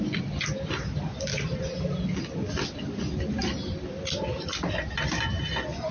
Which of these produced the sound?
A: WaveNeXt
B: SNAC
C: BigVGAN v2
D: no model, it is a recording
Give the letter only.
D